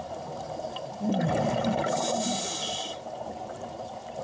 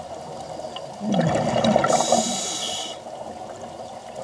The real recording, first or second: second